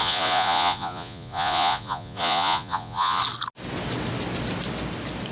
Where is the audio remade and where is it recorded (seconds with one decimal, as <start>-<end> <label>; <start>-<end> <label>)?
0.0-3.2 remade; 3.2-5.3 recorded